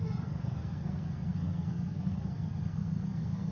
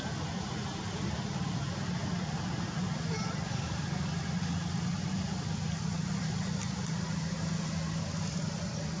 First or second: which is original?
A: second